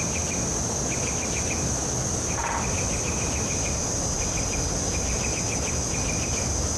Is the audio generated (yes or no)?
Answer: no